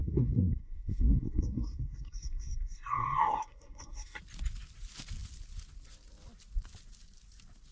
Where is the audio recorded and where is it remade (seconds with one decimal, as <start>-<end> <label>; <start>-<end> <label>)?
0.0-4.2 remade; 4.2-7.7 recorded

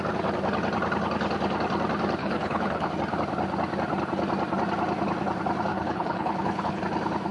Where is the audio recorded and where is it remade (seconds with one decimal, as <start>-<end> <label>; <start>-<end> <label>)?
0.0-2.2 recorded; 2.2-2.9 remade; 2.9-5.7 recorded; 5.7-6.8 remade; 6.8-7.3 recorded

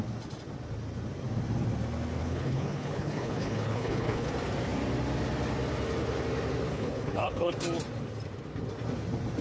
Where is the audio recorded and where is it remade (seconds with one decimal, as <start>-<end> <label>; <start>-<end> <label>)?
0.0-2.2 recorded; 2.2-4.3 remade; 4.3-6.7 recorded; 6.7-7.5 remade; 7.5-9.4 recorded

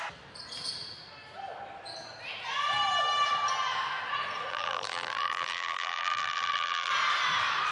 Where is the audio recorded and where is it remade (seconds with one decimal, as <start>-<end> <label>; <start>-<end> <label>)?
0.0-4.5 recorded; 4.5-6.9 remade; 6.9-7.7 recorded

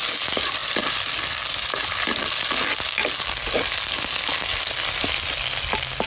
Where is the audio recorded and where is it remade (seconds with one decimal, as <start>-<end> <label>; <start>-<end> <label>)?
0.0-6.1 recorded

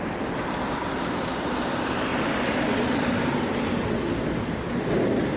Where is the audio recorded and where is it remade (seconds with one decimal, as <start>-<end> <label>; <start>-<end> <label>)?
0.0-5.4 recorded

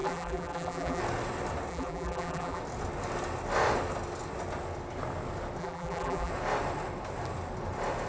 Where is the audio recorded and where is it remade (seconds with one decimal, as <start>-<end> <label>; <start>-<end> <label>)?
0.0-1.0 remade; 1.0-1.7 recorded; 1.7-2.6 remade; 2.6-5.6 recorded; 5.6-6.3 remade; 6.3-8.1 recorded